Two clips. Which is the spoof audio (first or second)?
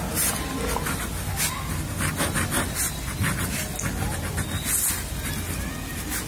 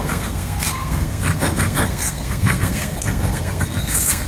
second